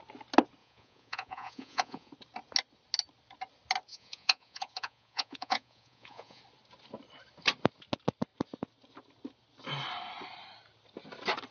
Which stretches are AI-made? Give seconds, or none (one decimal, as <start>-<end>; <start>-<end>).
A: 0.6-2.1; 3.9-6.4